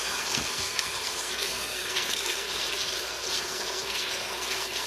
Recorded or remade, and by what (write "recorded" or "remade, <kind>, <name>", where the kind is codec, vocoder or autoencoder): remade, codec, SNAC